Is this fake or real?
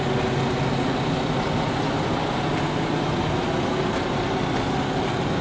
real